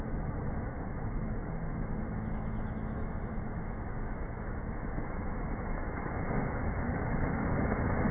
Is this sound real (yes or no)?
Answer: no